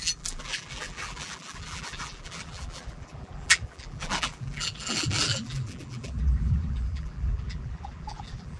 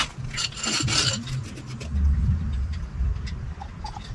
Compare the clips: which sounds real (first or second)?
second